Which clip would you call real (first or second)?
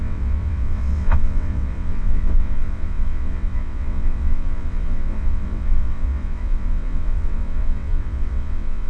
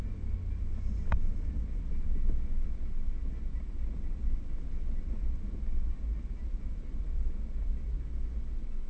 second